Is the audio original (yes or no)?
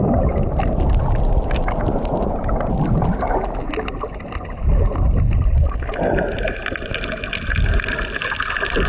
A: yes